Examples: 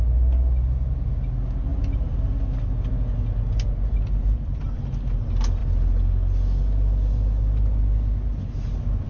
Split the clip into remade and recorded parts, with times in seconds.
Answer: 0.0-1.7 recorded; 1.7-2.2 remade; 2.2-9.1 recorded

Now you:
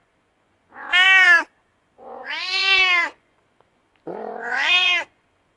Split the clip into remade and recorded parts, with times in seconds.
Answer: 0.0-5.6 remade